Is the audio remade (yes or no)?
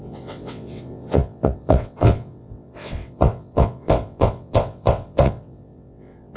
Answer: yes